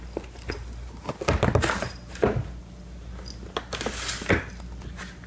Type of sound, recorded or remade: recorded